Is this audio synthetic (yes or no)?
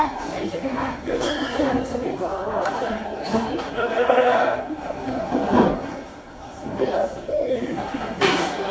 yes